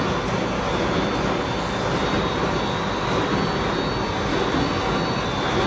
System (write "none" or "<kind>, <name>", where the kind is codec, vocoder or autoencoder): none